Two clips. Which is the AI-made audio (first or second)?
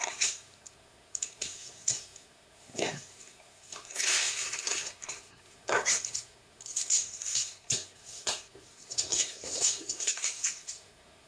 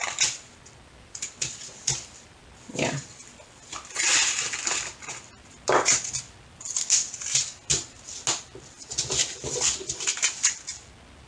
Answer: first